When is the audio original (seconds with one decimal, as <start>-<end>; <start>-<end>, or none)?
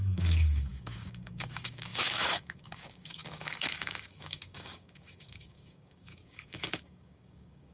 none